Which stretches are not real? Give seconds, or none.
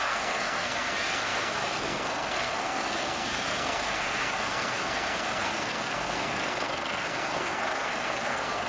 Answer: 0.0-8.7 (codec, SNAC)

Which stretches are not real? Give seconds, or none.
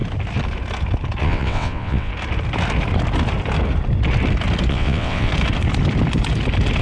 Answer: 1.2-2.1 (vocoder, WaveNeXt); 4.7-5.3